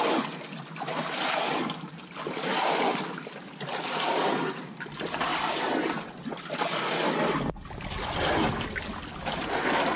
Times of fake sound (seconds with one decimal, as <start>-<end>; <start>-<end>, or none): none